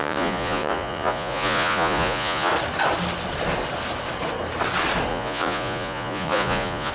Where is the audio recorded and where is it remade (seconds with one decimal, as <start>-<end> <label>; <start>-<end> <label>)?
0.0-2.5 remade; 2.5-5.1 recorded; 5.1-6.9 remade

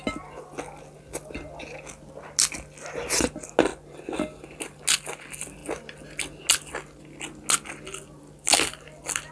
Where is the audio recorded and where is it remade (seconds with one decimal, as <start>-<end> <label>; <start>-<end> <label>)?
0.0-9.3 recorded

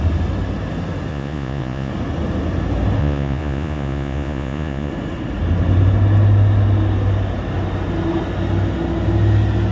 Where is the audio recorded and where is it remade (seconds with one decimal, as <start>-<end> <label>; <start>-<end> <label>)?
0.0-1.1 recorded; 1.1-1.9 remade; 1.9-3.0 recorded; 3.0-4.9 remade; 4.9-9.7 recorded

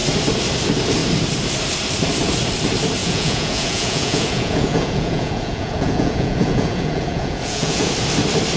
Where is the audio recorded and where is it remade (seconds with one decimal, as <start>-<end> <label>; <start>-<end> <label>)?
0.0-3.0 recorded; 3.0-7.9 remade; 7.9-8.6 recorded

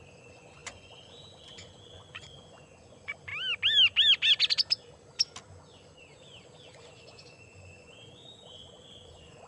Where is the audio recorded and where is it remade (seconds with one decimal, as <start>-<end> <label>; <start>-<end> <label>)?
0.0-3.3 remade; 3.3-5.6 recorded; 5.6-9.5 remade

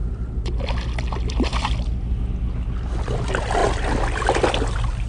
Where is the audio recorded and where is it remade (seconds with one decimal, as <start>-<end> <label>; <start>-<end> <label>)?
0.0-5.1 recorded

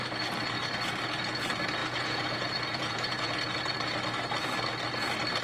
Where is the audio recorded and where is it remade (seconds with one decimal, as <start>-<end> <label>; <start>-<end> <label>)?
0.0-1.8 recorded; 1.8-3.3 remade; 3.3-5.4 recorded

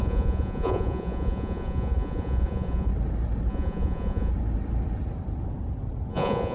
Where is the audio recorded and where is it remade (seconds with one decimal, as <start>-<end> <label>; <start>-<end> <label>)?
0.0-2.9 remade; 2.9-3.5 recorded; 3.5-4.3 remade; 4.3-6.1 recorded; 6.1-6.5 remade